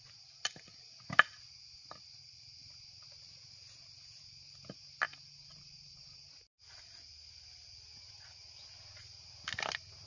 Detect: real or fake real